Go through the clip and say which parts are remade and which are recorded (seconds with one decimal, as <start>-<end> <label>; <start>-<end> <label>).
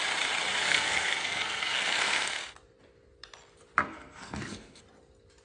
0.0-0.6 recorded; 0.6-2.4 remade; 2.4-3.9 recorded; 3.9-4.8 remade; 4.8-5.4 recorded